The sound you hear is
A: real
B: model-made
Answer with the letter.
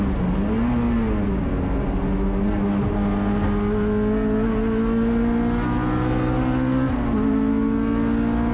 A